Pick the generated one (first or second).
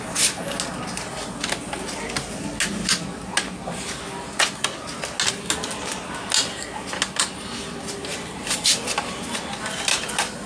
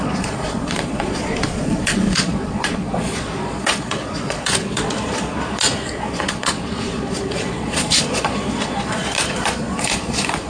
second